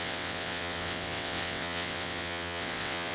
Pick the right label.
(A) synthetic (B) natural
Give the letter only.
A